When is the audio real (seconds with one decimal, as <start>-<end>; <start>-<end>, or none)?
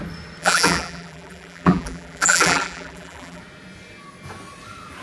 0.0-0.4; 3.4-5.0